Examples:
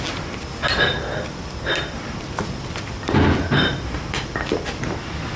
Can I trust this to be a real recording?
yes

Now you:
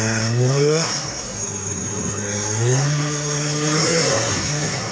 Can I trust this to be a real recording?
no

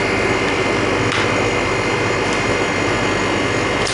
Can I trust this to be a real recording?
yes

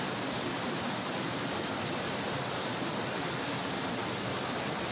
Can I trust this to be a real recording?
yes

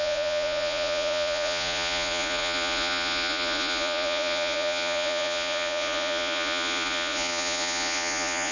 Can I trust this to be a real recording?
no